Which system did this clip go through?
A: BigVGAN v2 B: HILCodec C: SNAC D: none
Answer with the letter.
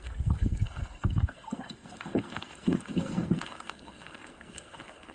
C